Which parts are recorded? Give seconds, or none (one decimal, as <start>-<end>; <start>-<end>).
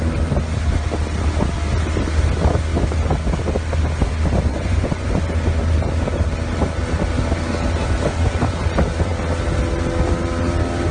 0.0-4.5; 5.2-10.9